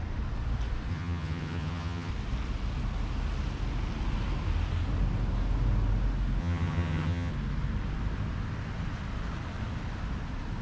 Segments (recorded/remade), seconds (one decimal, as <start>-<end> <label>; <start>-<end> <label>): 0.0-0.9 recorded; 0.9-2.1 remade; 2.1-6.4 recorded; 6.4-7.3 remade; 7.3-10.6 recorded